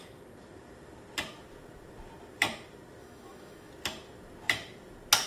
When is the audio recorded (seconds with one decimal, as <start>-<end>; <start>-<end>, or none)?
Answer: 0.0-3.0; 3.7-5.3